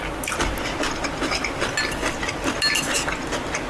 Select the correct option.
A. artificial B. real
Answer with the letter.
B